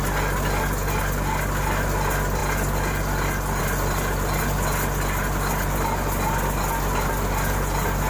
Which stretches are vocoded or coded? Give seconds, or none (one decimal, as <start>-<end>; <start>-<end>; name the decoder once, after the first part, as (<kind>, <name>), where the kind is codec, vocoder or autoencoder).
none